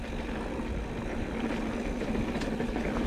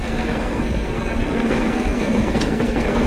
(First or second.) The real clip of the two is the first